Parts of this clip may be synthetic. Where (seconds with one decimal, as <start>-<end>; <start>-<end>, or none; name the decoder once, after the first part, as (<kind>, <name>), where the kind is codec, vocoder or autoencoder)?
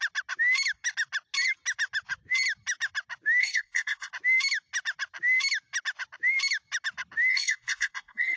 3.4-4.1 (codec, SNAC); 7.3-8.4